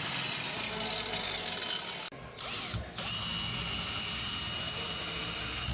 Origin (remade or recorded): recorded